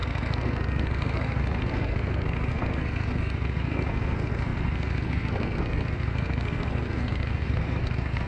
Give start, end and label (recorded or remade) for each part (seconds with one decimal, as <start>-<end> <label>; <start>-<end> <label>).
0.0-8.3 remade